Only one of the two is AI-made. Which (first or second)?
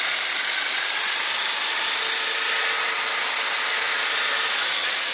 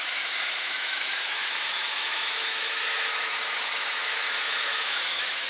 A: second